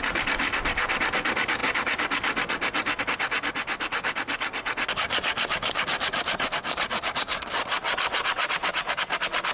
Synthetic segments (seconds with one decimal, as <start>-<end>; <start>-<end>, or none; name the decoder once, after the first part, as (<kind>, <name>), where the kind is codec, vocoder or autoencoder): none